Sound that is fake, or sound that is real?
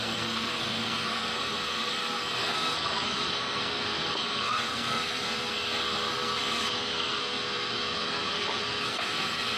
fake